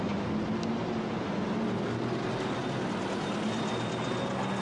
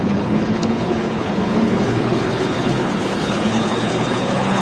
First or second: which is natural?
first